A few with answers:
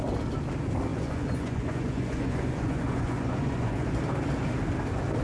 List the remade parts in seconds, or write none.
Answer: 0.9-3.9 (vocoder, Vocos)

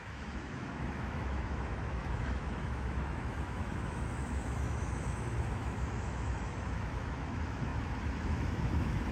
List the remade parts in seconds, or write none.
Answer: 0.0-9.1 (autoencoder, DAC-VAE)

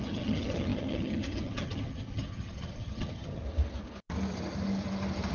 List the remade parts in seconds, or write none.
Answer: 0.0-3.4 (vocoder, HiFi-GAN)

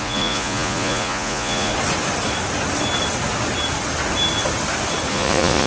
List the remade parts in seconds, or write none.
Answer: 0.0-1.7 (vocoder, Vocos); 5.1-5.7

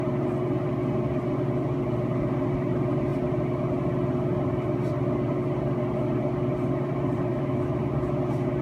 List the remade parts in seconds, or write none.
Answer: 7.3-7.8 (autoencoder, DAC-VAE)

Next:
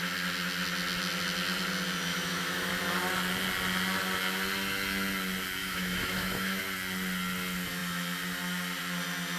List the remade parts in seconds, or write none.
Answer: 2.1-2.7 (autoencoder, DAC-VAE); 5.6-6.6

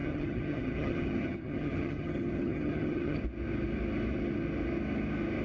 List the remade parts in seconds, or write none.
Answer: 0.0-3.2 (vocoder, HiFi-GAN)

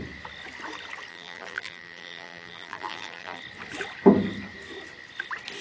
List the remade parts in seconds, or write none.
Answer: 1.1-3.4 (vocoder, BigVGAN v2)